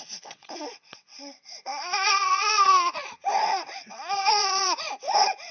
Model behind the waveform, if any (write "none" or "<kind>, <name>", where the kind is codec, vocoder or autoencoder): vocoder, WaveNeXt